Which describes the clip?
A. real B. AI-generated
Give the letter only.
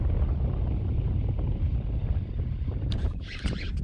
A